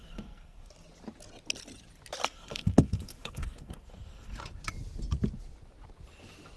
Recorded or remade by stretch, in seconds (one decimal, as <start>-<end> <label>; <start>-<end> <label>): 0.0-0.7 remade; 0.7-2.2 recorded; 2.2-4.4 remade; 4.4-6.6 recorded